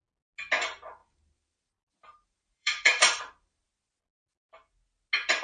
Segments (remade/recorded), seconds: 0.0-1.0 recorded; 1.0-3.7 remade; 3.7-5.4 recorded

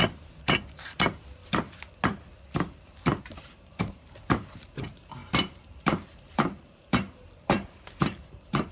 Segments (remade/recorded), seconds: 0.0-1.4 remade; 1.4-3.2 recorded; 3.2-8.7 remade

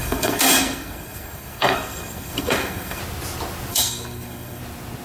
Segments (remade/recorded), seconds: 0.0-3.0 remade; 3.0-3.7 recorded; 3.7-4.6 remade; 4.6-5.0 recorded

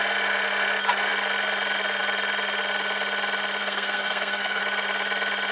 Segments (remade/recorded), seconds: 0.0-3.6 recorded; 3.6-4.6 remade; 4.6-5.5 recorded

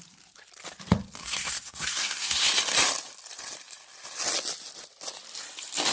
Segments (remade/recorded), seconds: 0.0-1.2 recorded; 1.2-2.5 remade; 2.5-5.9 recorded

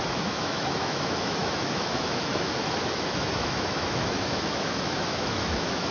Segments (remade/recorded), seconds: 0.0-5.9 remade